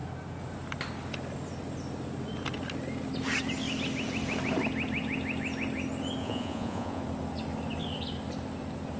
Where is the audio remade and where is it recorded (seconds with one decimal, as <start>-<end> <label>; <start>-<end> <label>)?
0.0-6.2 recorded; 6.2-7.0 remade; 7.0-9.0 recorded